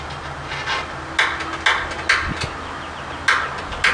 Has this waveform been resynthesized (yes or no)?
no